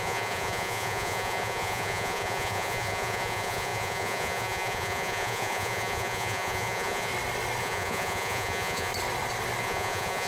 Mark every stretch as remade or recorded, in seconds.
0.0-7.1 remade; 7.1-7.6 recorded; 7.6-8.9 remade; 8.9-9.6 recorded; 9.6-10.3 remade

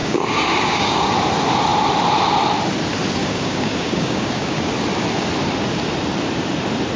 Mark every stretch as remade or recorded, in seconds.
0.0-1.1 remade; 1.1-3.2 recorded; 3.2-4.7 remade; 4.7-7.0 recorded

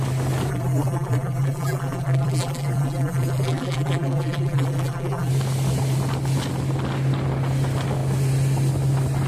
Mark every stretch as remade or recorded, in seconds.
0.0-0.5 recorded; 0.5-5.3 remade; 5.3-9.3 recorded

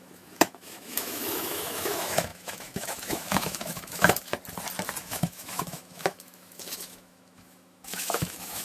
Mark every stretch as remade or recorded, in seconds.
0.0-4.3 remade; 4.3-5.0 recorded; 5.0-8.6 remade

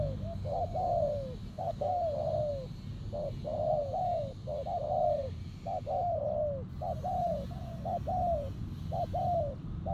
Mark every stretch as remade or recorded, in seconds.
0.0-1.5 recorded; 1.5-2.0 remade; 2.0-9.9 recorded

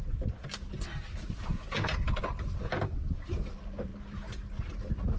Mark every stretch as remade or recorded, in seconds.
0.0-5.2 recorded

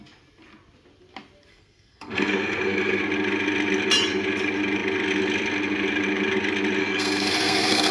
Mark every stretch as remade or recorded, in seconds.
0.0-1.5 recorded; 1.5-3.0 remade; 3.0-6.8 recorded; 6.8-7.9 remade

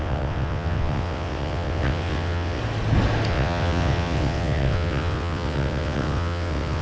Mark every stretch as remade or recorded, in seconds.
0.0-2.6 remade; 2.6-3.3 recorded; 3.3-6.8 remade